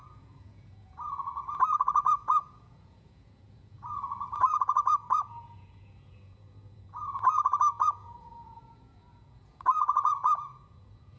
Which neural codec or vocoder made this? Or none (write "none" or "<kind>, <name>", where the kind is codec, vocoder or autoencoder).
vocoder, Vocos